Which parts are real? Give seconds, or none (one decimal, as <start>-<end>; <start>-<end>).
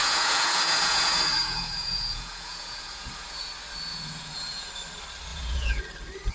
3.5-3.9; 4.7-5.3; 5.8-6.3